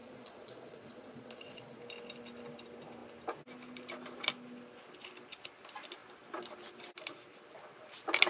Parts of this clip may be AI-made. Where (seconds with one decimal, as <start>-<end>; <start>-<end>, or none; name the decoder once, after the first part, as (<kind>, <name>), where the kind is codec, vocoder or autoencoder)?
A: 0.0-1.8 (vocoder, Vocos)